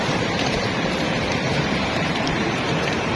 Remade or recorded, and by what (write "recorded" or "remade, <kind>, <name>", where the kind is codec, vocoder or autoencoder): remade, vocoder, BigVGAN v2